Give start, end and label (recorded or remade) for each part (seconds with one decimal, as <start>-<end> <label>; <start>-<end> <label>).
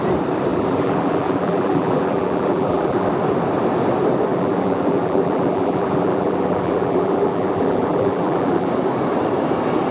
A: 0.0-0.5 recorded; 0.5-3.1 remade; 3.1-4.3 recorded; 4.3-8.7 remade; 8.7-9.9 recorded